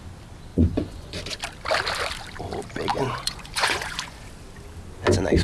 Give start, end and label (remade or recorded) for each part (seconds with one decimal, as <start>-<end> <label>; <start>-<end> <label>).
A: 0.0-0.5 recorded; 0.5-1.2 remade; 1.2-2.9 recorded; 2.9-4.3 remade; 4.3-5.4 recorded